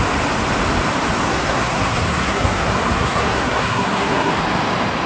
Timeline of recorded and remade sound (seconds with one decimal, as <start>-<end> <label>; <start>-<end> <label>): 0.0-1.2 recorded; 1.2-4.3 remade; 4.3-5.1 recorded